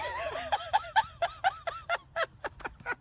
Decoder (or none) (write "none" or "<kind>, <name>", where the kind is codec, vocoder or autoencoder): none